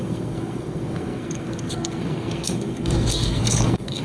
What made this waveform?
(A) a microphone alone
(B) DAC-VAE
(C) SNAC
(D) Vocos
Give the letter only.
C